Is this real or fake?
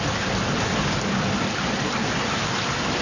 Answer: real